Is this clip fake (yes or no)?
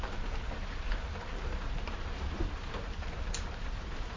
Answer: yes